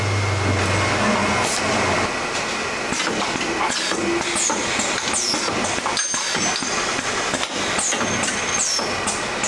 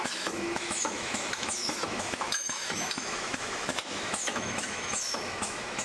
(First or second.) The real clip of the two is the first